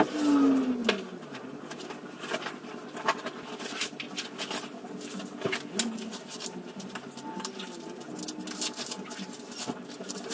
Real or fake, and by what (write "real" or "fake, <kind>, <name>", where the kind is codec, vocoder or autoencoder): real